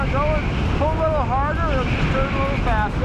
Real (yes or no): yes